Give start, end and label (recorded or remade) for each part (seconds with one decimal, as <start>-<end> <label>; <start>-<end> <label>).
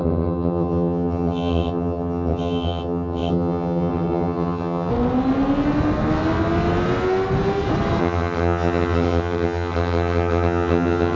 0.0-4.9 remade; 4.9-8.0 recorded; 8.0-11.2 remade